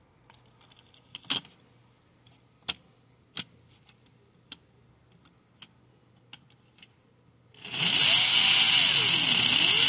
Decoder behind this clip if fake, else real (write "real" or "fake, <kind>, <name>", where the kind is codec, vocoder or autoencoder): real